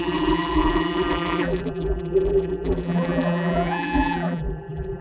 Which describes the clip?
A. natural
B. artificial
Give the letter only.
B